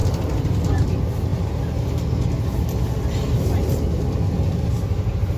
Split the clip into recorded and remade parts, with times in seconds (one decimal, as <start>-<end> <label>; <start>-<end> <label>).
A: 0.0-0.9 remade; 0.9-5.4 recorded